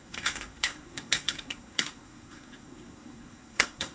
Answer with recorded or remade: remade